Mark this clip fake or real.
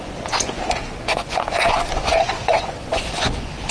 fake